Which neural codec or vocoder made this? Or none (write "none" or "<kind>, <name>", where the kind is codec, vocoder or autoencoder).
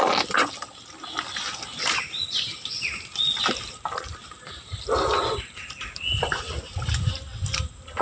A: none